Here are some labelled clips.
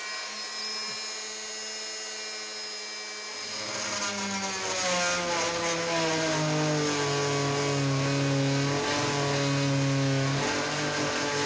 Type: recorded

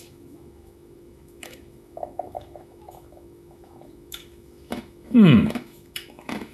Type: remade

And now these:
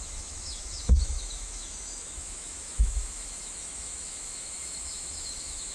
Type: remade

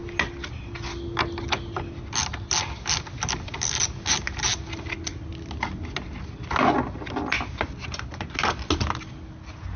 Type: recorded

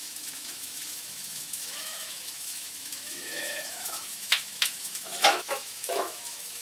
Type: remade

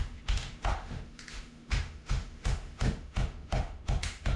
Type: remade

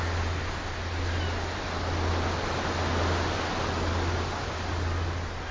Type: recorded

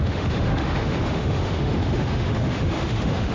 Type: remade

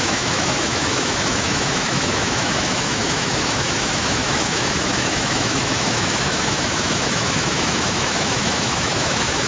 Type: remade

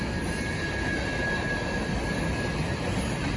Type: recorded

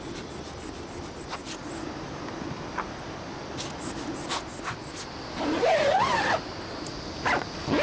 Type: recorded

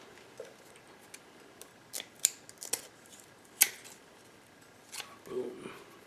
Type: recorded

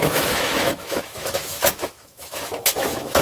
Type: remade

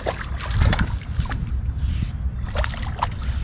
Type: recorded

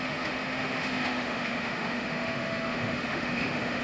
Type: remade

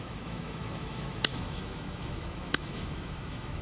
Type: remade